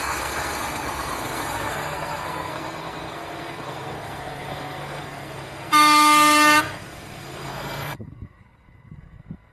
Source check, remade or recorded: remade